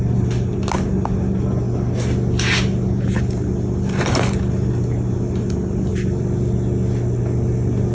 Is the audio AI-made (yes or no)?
no